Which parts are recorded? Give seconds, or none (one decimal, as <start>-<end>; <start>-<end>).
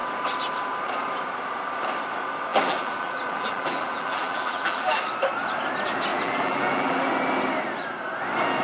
0.0-2.5; 5.0-6.1; 7.1-8.6